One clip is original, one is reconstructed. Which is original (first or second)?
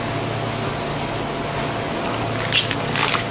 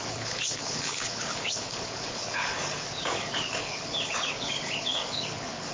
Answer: first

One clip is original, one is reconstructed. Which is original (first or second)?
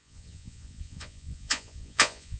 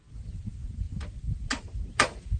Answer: second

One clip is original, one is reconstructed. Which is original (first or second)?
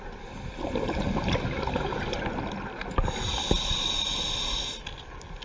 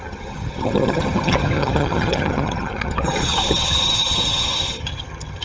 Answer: first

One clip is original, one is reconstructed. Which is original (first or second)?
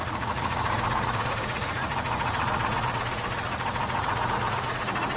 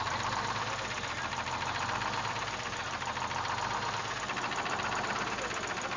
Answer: second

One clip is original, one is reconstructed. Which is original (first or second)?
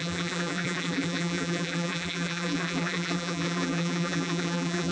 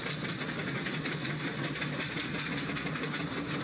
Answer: second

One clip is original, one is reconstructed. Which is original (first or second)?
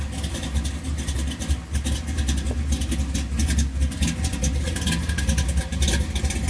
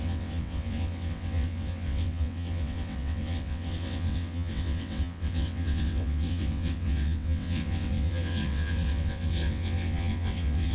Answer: first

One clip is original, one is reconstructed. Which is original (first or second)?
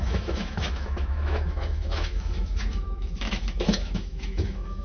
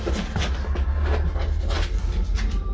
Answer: second